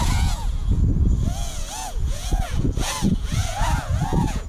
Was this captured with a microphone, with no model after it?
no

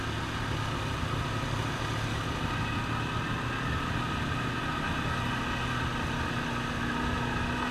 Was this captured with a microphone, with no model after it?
yes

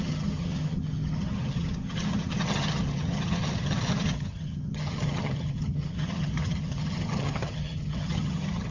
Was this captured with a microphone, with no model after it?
no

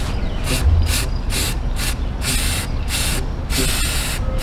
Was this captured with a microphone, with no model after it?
yes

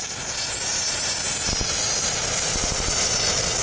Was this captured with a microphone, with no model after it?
yes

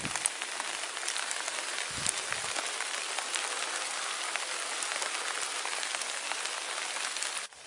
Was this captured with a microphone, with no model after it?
yes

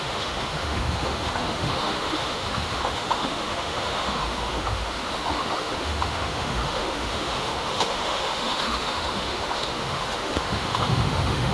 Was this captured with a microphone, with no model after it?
no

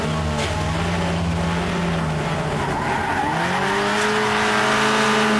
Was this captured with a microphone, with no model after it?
yes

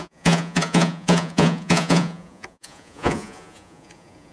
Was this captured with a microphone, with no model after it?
no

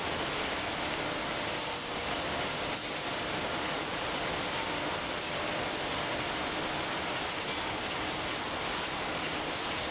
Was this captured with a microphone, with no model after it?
yes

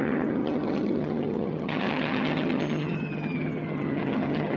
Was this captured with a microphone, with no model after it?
no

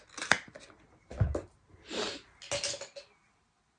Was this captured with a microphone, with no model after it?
yes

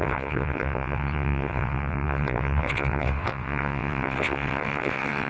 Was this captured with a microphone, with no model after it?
no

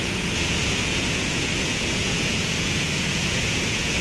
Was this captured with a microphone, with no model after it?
no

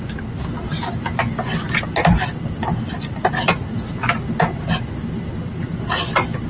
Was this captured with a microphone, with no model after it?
yes